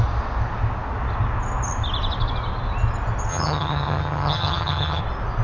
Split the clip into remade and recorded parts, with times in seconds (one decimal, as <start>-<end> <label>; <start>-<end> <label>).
0.0-3.3 recorded; 3.3-5.0 remade; 5.0-5.4 recorded